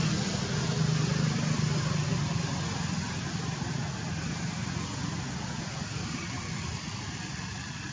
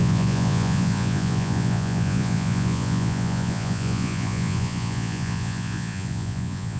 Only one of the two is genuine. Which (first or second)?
first